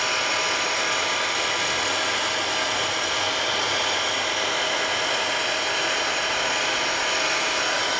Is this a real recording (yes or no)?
yes